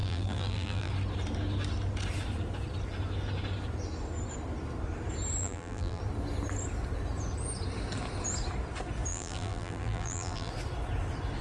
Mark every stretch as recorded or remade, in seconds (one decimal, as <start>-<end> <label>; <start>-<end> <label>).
0.0-0.9 remade; 0.9-5.4 recorded; 5.4-6.0 remade; 6.0-9.1 recorded; 9.1-10.5 remade; 10.5-11.4 recorded

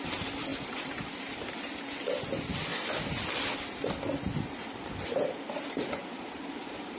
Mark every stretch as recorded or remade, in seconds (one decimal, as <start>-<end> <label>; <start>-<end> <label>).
0.0-0.5 recorded; 0.5-2.0 remade; 2.0-2.7 recorded; 2.7-7.0 remade

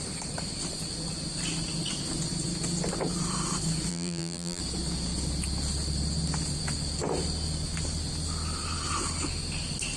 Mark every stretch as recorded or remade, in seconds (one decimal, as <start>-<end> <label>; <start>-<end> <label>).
0.0-3.9 recorded; 3.9-4.6 remade; 4.6-10.0 recorded

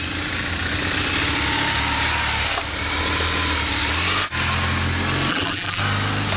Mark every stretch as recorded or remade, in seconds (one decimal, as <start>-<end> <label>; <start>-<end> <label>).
0.0-5.3 recorded; 5.3-5.8 remade; 5.8-6.4 recorded

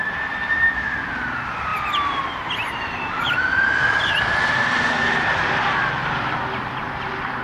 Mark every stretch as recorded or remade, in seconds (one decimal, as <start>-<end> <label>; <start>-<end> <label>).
0.0-1.7 remade; 1.7-4.4 recorded; 4.4-7.4 remade